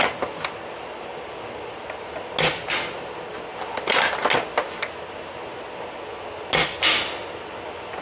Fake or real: real